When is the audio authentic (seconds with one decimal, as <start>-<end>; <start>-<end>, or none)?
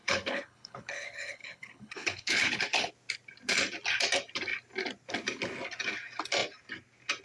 2.9-7.2